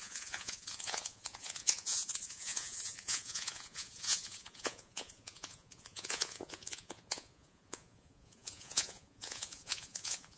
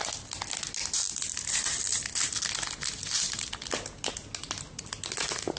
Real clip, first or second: second